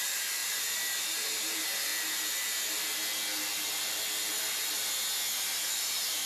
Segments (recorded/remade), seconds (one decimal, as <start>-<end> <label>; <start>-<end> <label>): 0.0-1.9 remade; 1.9-5.7 recorded; 5.7-6.3 remade